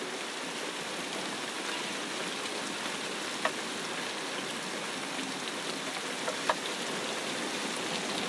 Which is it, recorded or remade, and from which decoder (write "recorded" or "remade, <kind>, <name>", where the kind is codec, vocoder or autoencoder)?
recorded